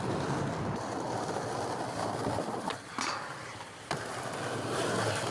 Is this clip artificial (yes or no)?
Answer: yes